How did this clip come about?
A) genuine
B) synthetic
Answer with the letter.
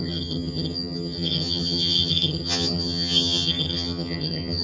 B